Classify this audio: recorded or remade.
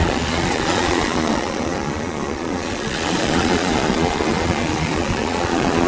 remade